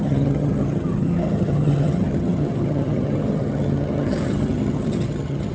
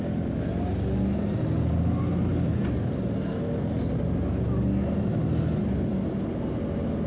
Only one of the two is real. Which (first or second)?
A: second